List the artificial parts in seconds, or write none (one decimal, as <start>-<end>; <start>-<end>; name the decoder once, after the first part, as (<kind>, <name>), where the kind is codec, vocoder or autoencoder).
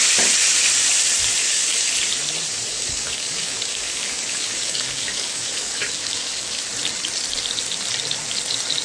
1.4-1.9 (codec, DAC); 2.7-6.7